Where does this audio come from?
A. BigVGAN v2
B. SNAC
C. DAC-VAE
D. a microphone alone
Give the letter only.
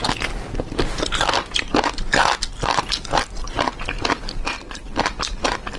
D